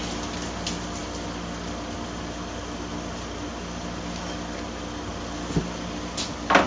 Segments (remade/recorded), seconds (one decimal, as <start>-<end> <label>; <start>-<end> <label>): 0.0-6.7 recorded